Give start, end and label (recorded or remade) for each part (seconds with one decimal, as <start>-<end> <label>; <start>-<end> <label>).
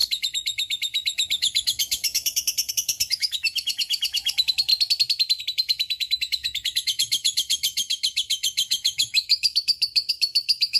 0.0-4.7 remade; 4.7-5.4 recorded; 5.4-10.8 remade